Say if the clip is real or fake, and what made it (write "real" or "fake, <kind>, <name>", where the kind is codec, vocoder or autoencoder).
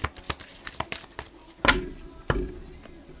real